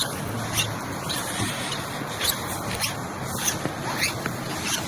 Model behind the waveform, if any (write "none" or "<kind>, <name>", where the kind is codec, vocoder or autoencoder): none